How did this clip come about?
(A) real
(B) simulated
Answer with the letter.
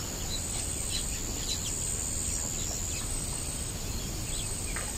A